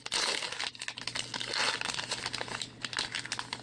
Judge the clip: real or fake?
real